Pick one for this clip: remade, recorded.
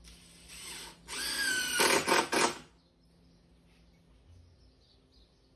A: recorded